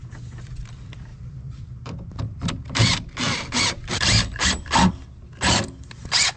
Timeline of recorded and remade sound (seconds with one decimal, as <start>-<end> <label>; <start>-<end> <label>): 0.0-1.1 recorded; 1.1-4.9 remade; 4.9-6.4 recorded